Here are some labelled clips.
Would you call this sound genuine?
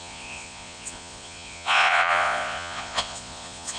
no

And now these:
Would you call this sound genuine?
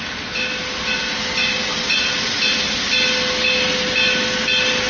yes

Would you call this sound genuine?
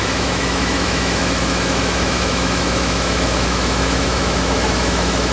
no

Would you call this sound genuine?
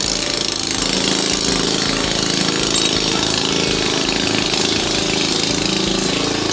yes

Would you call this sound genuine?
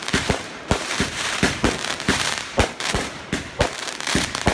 no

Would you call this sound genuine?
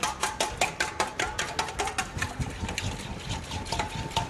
yes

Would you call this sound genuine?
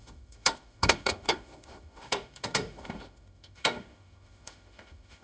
no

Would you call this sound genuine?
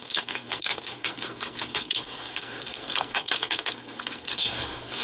no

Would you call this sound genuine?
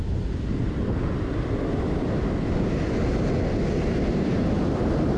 yes